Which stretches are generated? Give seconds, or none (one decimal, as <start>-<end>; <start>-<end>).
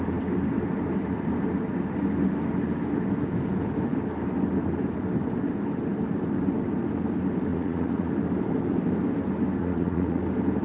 7.5-8.1; 9.6-10.2